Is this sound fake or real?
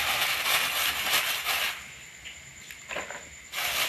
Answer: real